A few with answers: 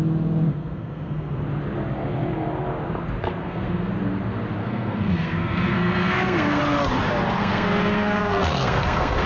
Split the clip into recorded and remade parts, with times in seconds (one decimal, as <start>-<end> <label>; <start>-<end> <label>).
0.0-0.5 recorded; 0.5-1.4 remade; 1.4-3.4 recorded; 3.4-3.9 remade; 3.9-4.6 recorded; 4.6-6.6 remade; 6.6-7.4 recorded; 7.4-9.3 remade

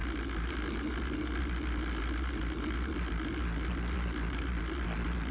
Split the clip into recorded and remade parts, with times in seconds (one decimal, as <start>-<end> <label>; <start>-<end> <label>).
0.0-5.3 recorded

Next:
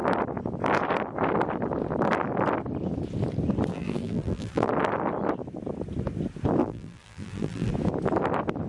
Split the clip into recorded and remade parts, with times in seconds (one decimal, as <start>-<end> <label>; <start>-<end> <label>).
0.0-3.7 recorded; 3.7-4.7 remade; 4.7-6.6 recorded; 6.6-7.7 remade; 7.7-8.7 recorded

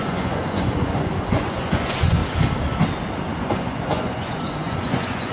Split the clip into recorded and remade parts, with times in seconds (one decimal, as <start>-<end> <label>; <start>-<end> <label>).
0.0-2.2 remade; 2.2-3.4 recorded; 3.4-5.3 remade

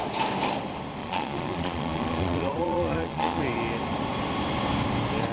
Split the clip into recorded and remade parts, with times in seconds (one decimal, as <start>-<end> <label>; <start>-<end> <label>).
0.0-1.0 recorded; 1.0-3.4 remade; 3.4-5.3 recorded

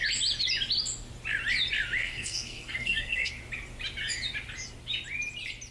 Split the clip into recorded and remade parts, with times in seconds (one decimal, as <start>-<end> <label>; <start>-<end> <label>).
0.0-2.0 recorded; 2.0-3.3 remade; 3.3-5.7 recorded

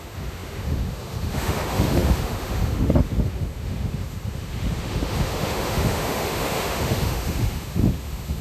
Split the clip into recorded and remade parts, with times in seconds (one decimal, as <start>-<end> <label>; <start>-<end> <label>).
0.0-8.4 remade

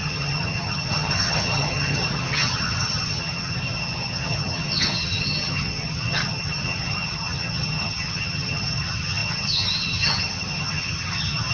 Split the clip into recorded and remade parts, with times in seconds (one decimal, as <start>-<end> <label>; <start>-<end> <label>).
0.0-11.5 remade